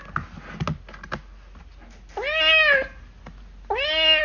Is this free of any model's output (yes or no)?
yes